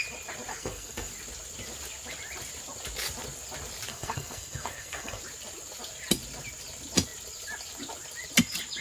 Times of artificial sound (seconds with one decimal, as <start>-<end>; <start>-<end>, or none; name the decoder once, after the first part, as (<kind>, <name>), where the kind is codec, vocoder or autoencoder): 0.5-1.1 (codec, SNAC); 3.9-5.2

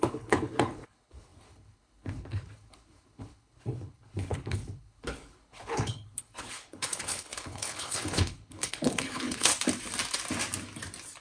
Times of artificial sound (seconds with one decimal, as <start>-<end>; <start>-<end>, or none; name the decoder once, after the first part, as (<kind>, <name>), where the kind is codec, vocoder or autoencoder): 0.0-9.5 (codec, HILCodec)

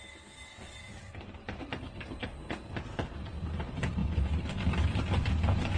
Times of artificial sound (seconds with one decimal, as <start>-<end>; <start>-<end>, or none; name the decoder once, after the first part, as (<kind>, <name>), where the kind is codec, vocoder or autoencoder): none

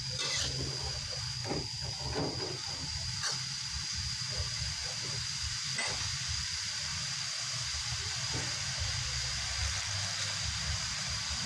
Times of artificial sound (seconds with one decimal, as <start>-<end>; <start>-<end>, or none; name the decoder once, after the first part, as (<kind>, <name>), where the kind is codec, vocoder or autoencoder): 1.4-3.6 (vocoder, BigVGAN v2); 4.8-6.1